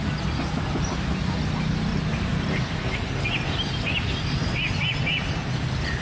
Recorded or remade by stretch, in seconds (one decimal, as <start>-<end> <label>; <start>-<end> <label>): 0.0-1.9 recorded; 1.9-5.5 remade; 5.5-6.0 recorded